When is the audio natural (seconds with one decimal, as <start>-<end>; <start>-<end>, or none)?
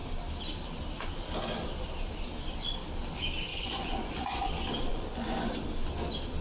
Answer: 0.0-3.5; 4.5-4.9; 5.5-6.4